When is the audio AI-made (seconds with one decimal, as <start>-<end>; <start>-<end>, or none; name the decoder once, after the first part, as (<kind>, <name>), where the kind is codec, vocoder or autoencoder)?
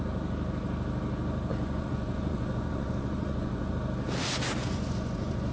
1.5-3.7 (vocoder, Vocos); 4.6-5.5